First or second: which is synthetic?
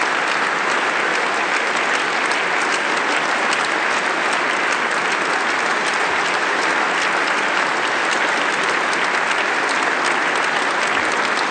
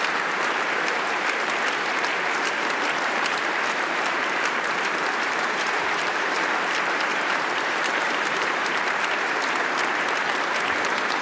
second